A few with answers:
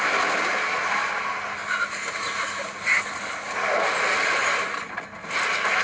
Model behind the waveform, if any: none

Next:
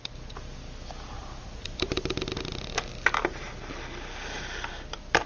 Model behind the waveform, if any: none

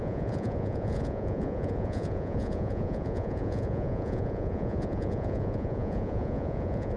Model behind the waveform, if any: vocoder, Vocos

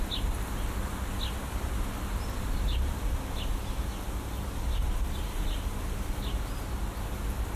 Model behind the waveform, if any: none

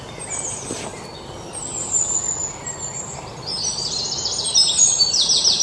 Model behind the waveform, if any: none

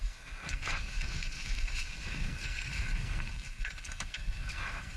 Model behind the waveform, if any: codec, SNAC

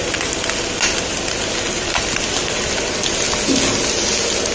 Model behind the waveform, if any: none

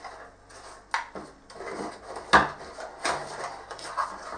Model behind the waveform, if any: none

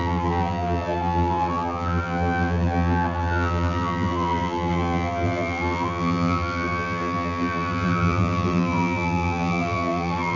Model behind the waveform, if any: vocoder, BigVGAN v2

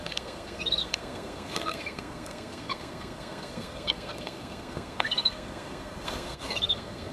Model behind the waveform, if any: codec, SNAC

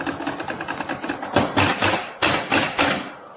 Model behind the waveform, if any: none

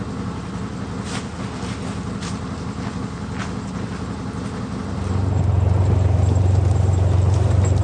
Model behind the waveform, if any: none